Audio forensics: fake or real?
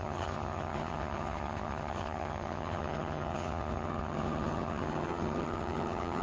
fake